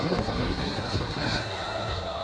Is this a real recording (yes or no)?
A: no